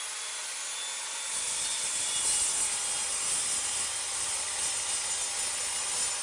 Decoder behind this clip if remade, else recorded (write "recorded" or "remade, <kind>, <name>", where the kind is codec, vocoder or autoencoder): recorded